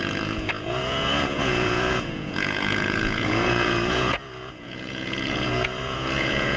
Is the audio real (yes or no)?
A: no